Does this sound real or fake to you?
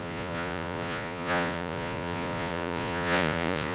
fake